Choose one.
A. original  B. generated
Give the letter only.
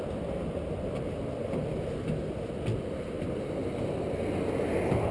A